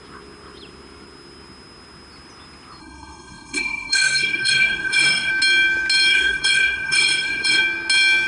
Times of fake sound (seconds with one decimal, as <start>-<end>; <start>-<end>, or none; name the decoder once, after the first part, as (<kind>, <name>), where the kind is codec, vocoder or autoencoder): 2.8-5.3 (codec, SNAC); 6.1-7.6